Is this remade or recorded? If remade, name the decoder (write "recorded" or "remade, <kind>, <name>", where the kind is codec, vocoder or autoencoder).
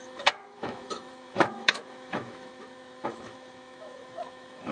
remade, autoencoder, DAC-VAE